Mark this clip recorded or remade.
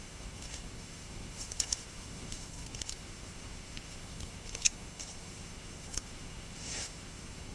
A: remade